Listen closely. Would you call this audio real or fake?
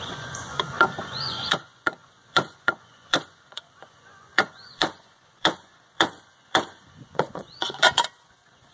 fake